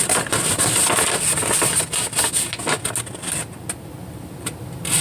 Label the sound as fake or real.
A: real